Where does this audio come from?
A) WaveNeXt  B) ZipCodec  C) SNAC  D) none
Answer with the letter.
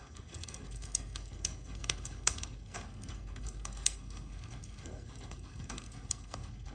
C